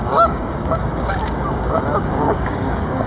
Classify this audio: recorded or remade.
remade